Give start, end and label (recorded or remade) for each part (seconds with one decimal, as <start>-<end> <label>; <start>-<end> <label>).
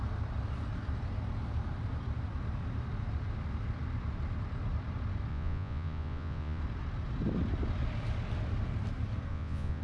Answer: 0.0-5.3 recorded; 5.3-6.6 remade; 6.6-9.3 recorded; 9.3-9.8 remade